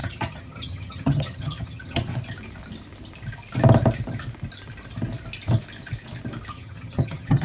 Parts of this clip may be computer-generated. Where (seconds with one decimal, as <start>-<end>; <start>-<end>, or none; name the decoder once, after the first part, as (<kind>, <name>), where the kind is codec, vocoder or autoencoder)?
0.0-2.1 (vocoder, HiFi-GAN); 6.5-7.4